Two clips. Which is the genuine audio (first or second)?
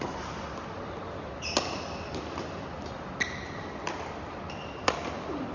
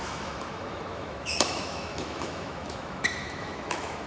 first